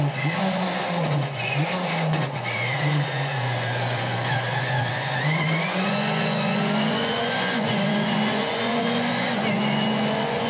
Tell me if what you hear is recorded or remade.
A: remade